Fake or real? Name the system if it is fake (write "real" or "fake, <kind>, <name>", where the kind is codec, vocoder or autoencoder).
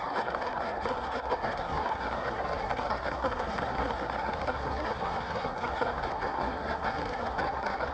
fake, codec, SNAC